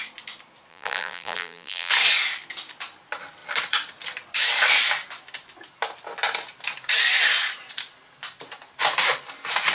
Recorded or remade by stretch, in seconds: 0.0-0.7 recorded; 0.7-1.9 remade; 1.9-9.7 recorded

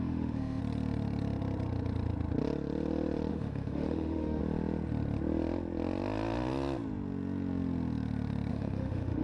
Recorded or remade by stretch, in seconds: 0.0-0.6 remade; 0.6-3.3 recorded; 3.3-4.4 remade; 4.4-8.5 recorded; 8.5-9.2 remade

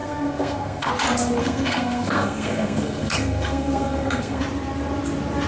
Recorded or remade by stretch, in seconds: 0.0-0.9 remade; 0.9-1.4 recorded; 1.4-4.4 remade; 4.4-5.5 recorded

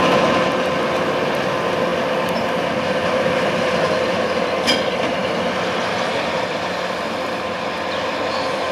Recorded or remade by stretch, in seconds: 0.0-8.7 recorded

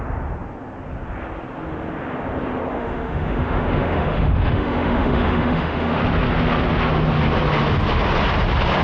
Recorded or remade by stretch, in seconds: 0.0-2.7 recorded; 2.7-6.0 remade; 6.0-8.8 recorded

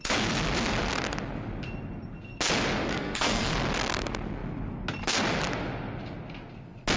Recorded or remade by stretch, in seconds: 0.0-2.9 recorded; 2.9-3.5 remade; 3.5-7.0 recorded